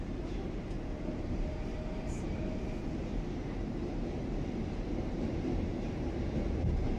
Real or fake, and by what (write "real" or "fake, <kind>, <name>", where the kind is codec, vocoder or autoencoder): fake, vocoder, BigVGAN v2